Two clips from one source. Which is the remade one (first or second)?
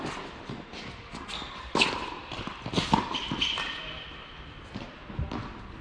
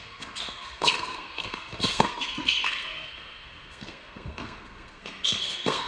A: second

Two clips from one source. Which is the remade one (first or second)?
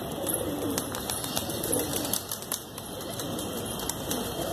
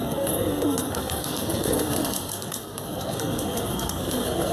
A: second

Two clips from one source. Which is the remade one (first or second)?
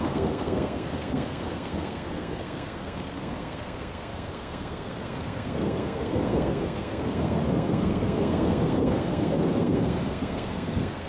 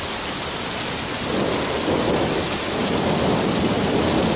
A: first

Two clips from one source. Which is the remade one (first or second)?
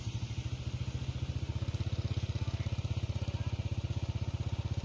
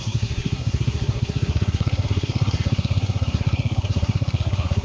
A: second